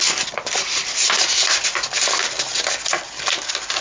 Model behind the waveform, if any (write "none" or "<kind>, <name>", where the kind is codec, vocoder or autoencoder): none